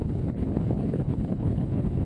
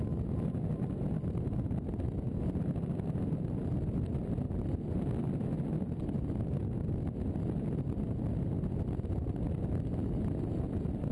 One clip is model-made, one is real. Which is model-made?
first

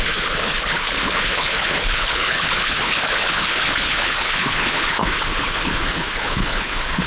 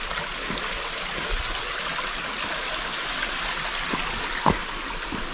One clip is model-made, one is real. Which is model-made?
first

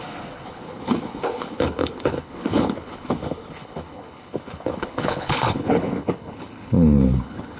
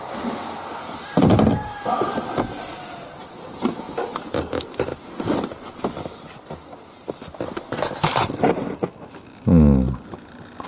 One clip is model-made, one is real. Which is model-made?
first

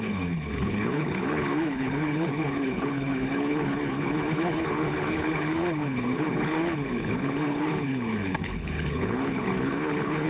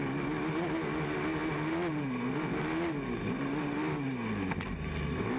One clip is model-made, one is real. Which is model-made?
first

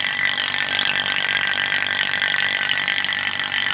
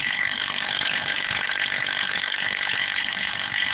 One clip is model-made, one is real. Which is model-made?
second